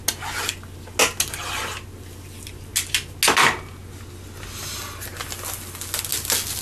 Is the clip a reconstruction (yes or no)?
no